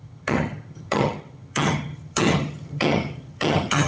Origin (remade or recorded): remade